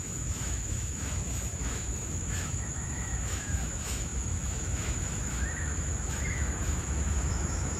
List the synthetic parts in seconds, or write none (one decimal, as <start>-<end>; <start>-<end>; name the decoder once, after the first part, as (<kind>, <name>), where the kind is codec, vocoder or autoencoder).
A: 0.0-7.8 (autoencoder, DAC-VAE)